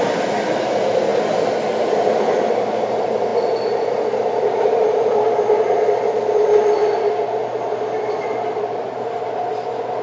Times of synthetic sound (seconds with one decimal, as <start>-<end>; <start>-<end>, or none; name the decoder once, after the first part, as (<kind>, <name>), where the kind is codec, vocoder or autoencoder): none